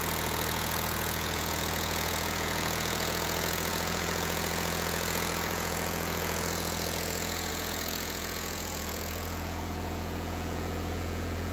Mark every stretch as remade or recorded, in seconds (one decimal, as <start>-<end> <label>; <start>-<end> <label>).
0.0-11.5 remade

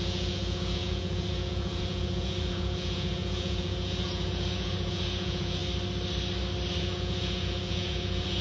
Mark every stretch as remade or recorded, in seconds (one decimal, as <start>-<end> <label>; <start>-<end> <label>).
0.0-5.6 remade; 5.6-6.8 recorded; 6.8-8.4 remade

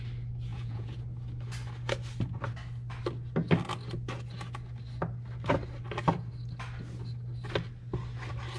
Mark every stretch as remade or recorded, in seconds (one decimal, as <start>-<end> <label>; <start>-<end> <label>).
0.0-0.5 recorded; 0.5-1.0 remade; 1.0-8.6 recorded

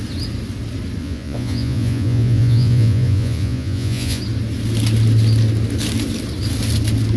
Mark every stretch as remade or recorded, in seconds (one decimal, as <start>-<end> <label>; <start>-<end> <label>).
0.0-1.0 recorded; 1.0-4.2 remade; 4.2-7.2 recorded

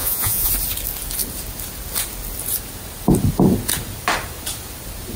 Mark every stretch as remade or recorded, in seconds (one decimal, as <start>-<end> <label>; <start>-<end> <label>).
0.0-0.5 remade; 0.5-5.2 recorded

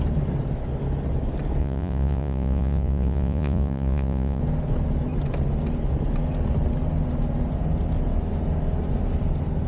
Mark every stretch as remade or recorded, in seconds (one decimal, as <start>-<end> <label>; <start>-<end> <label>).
0.0-1.6 recorded; 1.6-4.4 remade; 4.4-9.7 recorded

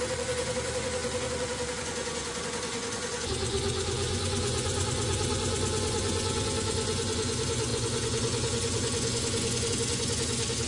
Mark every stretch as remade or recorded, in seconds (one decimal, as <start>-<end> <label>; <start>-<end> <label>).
0.0-10.7 remade

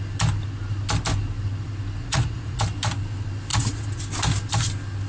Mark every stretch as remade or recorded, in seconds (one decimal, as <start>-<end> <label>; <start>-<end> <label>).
0.0-2.0 recorded; 2.0-2.6 remade; 2.6-3.5 recorded; 3.5-4.0 remade; 4.0-5.1 recorded